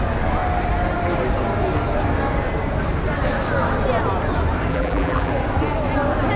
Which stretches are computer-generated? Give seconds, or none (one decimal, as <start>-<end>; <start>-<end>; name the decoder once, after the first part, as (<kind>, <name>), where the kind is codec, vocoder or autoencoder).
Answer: 4.7-5.3 (vocoder, BigVGAN v2)